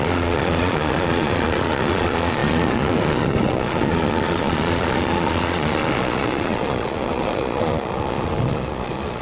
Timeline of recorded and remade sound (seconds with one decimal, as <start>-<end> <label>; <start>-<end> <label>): 0.0-9.2 remade